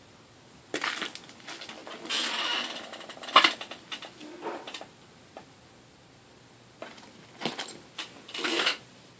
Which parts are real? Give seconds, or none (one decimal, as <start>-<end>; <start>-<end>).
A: 0.0-9.2